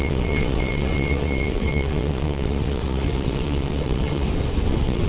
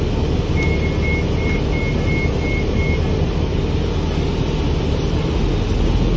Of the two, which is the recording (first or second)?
second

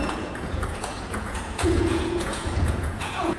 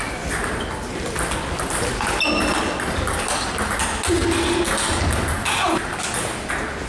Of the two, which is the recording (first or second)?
second